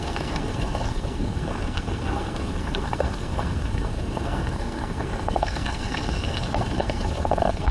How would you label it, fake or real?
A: fake